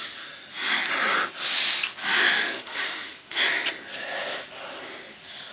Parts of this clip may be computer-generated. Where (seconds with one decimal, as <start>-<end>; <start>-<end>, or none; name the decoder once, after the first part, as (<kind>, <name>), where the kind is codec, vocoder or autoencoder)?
2.0-3.4 (autoencoder, DAC-VAE)